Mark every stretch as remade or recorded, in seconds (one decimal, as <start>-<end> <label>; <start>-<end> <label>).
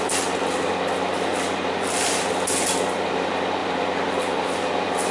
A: 0.0-1.3 recorded; 1.3-2.3 remade; 2.3-3.6 recorded; 3.6-4.5 remade; 4.5-5.1 recorded